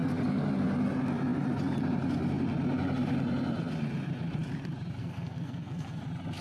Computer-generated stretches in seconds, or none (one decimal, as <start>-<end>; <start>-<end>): 5.0-6.0